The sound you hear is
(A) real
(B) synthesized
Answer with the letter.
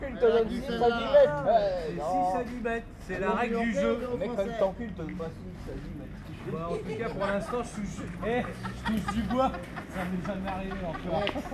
A